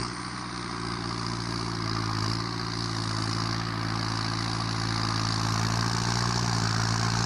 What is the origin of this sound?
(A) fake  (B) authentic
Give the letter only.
B